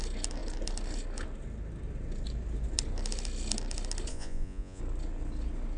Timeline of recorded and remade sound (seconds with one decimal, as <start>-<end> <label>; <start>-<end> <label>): 0.0-4.1 recorded; 4.1-4.8 remade; 4.8-5.8 recorded